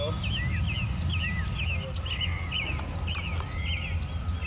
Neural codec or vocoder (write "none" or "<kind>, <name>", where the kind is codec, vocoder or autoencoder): none